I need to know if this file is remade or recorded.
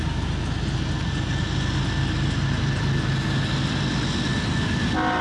recorded